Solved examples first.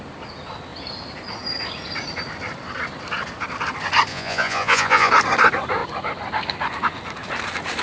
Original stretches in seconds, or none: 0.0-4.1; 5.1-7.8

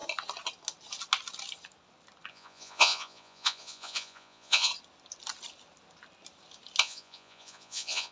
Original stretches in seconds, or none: 0.0-2.3; 4.7-6.8

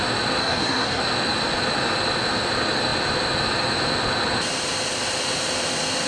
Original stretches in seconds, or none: 0.0-0.4; 1.0-6.1

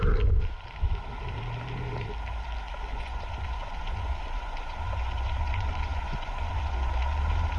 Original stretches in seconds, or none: 0.0-2.9; 6.9-7.6

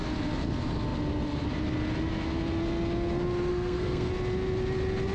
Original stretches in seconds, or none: 0.0-3.5; 4.1-5.1

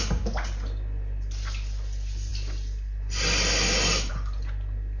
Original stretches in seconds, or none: 0.0-5.0